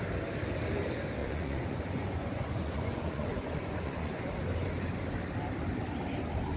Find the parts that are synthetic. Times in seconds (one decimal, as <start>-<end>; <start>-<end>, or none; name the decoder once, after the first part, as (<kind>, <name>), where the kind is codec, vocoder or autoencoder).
1.2-4.2 (vocoder, Vocos)